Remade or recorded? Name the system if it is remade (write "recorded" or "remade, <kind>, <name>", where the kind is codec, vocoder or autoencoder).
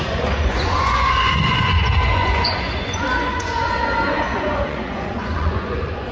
remade, vocoder, Vocos